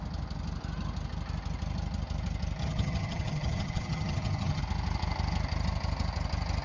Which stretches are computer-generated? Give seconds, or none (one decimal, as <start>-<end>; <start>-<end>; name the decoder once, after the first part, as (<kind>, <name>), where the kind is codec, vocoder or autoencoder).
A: 2.6-4.6 (vocoder, HiFi-GAN)